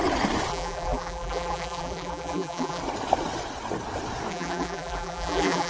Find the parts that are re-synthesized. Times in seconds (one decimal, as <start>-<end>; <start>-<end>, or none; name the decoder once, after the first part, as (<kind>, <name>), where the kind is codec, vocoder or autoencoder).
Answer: 0.5-2.8 (vocoder, BigVGAN v2); 4.3-5.7